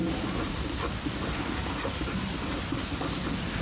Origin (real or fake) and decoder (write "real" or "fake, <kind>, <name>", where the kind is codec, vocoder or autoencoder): real